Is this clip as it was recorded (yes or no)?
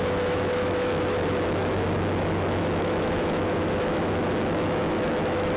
no